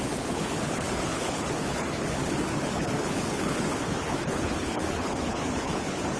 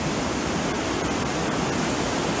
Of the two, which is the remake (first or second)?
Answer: first